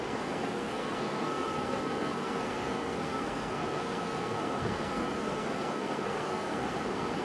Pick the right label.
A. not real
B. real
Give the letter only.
A